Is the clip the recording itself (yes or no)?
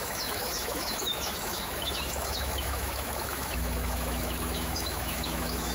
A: no